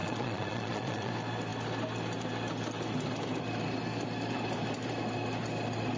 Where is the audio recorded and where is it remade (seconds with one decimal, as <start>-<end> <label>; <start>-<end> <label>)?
0.0-1.1 remade; 1.1-6.0 recorded